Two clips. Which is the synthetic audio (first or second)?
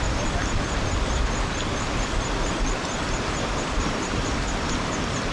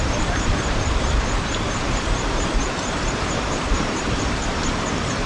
second